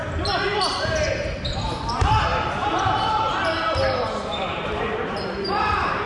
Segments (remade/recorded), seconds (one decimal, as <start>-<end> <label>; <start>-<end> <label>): 0.0-2.3 recorded; 2.3-6.1 remade